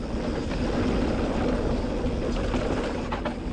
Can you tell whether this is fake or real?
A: real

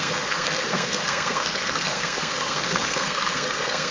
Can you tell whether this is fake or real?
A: fake